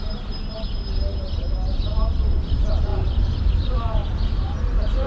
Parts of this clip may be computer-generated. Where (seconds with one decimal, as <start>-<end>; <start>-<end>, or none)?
none